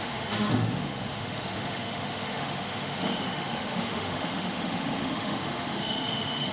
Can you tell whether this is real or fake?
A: fake